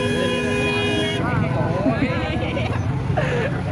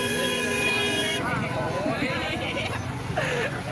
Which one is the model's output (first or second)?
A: second